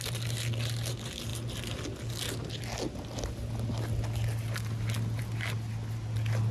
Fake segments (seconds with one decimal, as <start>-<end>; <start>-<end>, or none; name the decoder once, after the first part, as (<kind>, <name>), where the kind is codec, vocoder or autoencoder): none